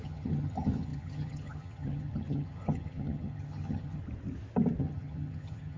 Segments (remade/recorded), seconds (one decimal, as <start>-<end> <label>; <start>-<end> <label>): 0.0-4.0 remade; 4.0-4.8 recorded; 4.8-5.8 remade